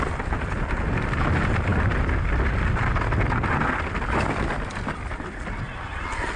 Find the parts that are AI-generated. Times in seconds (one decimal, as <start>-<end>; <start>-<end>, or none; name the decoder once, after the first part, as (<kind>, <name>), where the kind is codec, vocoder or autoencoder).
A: none